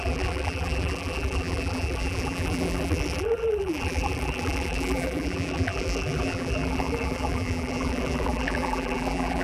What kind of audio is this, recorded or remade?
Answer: remade